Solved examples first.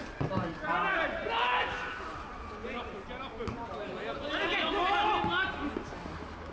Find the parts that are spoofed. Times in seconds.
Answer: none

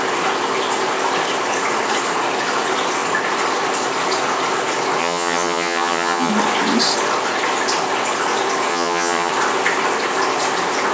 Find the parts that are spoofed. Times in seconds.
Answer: 5.0-6.3 (vocoder, HiFi-GAN); 8.7-9.3